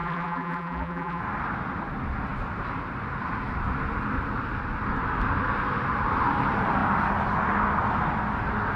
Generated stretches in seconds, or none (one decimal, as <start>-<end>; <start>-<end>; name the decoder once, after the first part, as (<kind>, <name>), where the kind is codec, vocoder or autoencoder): 0.0-1.2 (vocoder, BigVGAN v2)